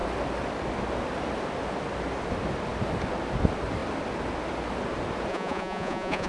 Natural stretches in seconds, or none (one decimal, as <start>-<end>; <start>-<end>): 0.0-5.3